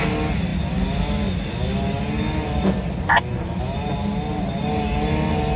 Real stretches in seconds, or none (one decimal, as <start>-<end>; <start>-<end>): 0.0-5.6